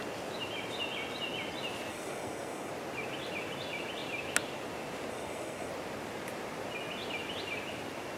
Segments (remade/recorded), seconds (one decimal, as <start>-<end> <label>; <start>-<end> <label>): 0.0-1.9 recorded; 1.9-2.7 remade; 2.7-5.1 recorded; 5.1-5.7 remade; 5.7-8.2 recorded